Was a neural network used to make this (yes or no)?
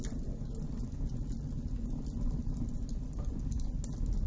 no